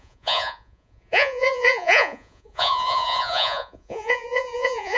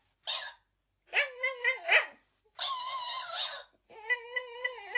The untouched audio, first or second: second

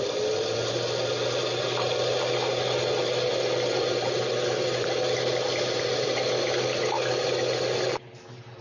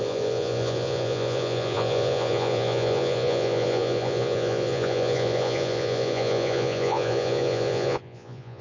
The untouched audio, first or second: first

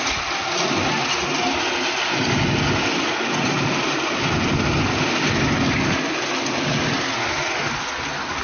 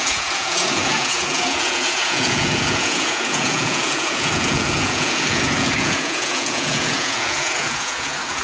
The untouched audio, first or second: first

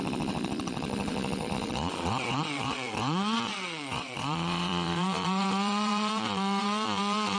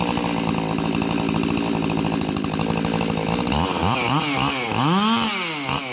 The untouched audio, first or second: second